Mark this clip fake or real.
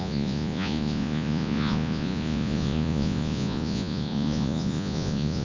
fake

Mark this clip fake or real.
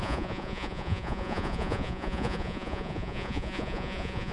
fake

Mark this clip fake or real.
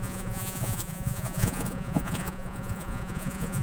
fake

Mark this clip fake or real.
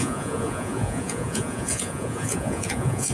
fake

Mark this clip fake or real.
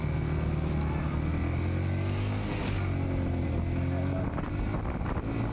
real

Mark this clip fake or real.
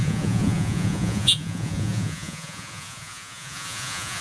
fake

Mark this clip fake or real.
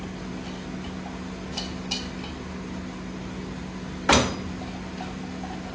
real